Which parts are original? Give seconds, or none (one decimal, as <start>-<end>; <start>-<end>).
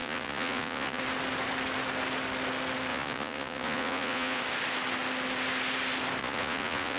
1.0-2.9; 4.4-6.2